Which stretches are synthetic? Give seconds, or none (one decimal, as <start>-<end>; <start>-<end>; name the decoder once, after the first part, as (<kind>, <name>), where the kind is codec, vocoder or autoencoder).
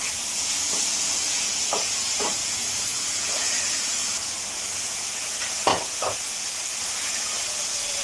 0.0-8.0 (vocoder, Vocos)